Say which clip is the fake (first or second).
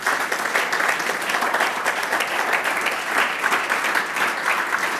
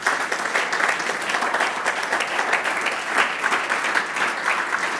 first